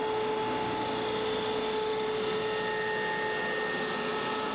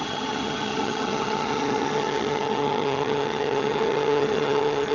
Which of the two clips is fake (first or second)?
second